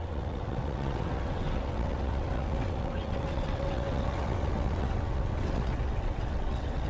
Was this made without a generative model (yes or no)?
no